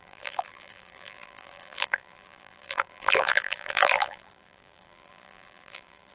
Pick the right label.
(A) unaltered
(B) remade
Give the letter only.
B